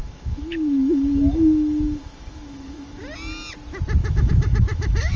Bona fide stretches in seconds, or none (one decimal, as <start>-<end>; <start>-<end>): 3.0-4.0